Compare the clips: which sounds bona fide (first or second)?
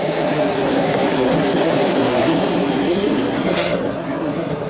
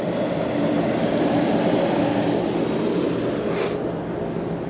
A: second